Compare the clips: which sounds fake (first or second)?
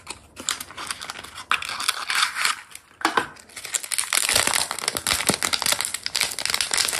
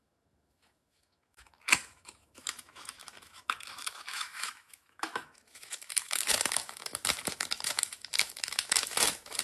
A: second